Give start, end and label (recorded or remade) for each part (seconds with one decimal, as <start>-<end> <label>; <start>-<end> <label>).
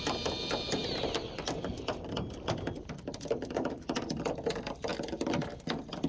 0.0-6.1 recorded